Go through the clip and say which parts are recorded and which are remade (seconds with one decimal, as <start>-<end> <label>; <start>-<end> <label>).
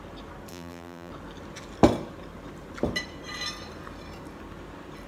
0.0-0.5 recorded; 0.5-1.1 remade; 1.1-5.1 recorded